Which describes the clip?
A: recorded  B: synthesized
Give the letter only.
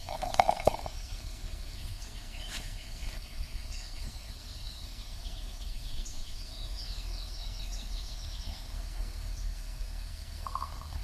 B